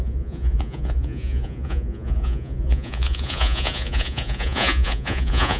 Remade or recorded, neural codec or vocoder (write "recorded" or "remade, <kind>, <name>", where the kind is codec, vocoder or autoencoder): remade, vocoder, Vocos